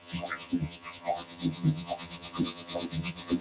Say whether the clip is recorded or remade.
remade